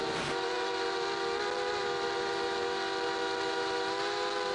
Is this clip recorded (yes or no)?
yes